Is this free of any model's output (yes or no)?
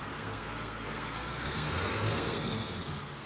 no